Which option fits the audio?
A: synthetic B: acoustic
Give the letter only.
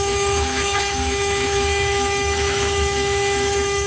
A